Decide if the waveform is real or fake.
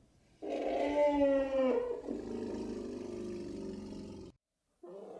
real